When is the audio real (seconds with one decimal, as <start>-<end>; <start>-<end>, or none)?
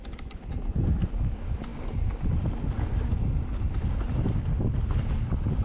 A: 0.0-5.6